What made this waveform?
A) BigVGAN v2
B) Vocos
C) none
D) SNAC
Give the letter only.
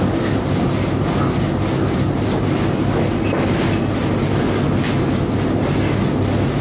C